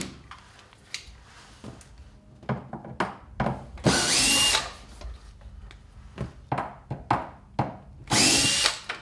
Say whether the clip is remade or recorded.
recorded